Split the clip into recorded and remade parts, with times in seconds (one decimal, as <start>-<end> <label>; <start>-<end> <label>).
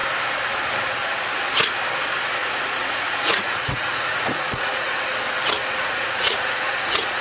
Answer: 0.0-2.4 recorded; 2.4-5.0 remade; 5.0-5.6 recorded; 5.6-7.2 remade